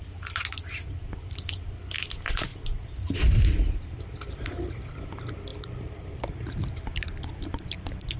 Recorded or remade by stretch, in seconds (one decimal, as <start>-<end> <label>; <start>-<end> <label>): 0.0-5.5 recorded; 5.5-7.2 remade; 7.2-8.2 recorded